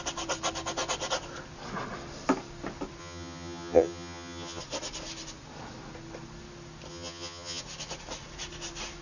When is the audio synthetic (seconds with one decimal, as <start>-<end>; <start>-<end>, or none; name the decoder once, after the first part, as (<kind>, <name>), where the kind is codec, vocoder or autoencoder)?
3.0-4.6 (vocoder, HiFi-GAN); 6.9-7.6